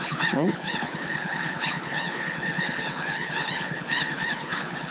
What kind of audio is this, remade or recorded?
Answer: remade